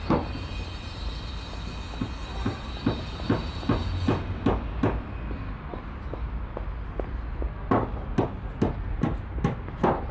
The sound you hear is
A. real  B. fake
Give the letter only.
A